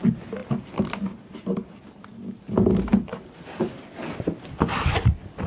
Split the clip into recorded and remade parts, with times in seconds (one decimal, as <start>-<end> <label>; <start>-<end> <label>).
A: 0.0-5.5 recorded